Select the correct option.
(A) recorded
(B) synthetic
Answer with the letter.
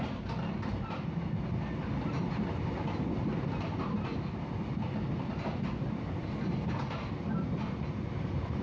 A